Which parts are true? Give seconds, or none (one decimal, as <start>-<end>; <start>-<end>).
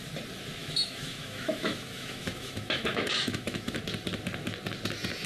0.0-0.6; 3.8-5.3